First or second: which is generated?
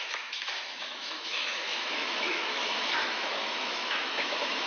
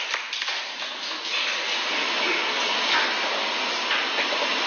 first